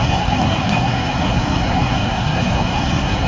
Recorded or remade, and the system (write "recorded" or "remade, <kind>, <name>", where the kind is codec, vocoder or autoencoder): remade, codec, SNAC